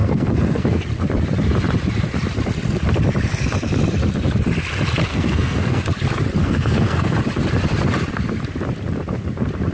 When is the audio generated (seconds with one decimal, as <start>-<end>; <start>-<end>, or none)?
0.0-0.8; 5.1-5.8; 6.4-7.1